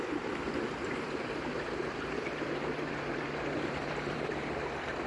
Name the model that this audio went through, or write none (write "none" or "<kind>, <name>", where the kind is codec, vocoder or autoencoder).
vocoder, BigVGAN v2